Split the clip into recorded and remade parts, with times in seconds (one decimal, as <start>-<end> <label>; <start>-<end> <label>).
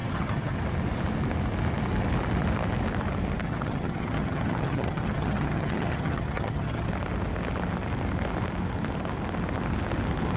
0.0-0.6 remade; 0.6-3.4 recorded; 3.4-6.9 remade; 6.9-10.4 recorded